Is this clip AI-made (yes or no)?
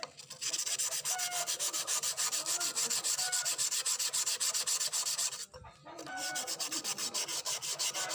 no